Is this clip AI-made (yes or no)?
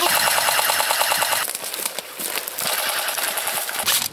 no